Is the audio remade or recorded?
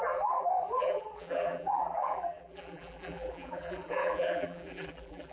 remade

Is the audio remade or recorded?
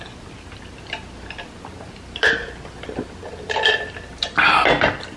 recorded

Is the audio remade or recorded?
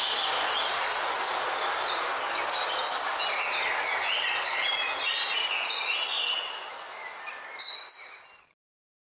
recorded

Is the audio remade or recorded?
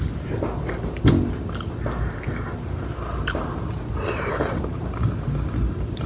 recorded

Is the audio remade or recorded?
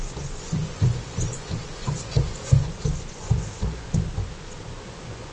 remade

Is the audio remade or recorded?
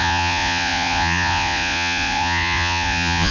remade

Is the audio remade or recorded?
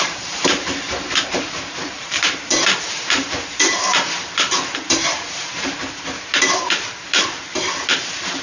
remade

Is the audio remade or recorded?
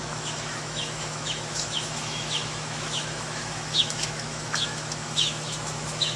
remade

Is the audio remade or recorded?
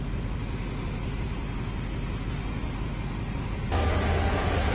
recorded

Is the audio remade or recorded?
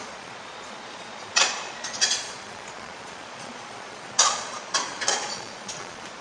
remade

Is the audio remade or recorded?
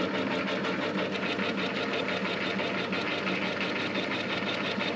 recorded